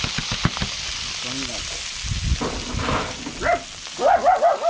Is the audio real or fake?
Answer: real